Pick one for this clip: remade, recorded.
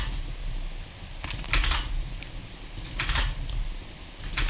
recorded